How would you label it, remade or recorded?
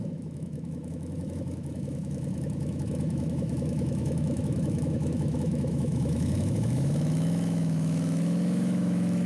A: remade